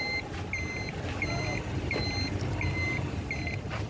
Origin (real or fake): real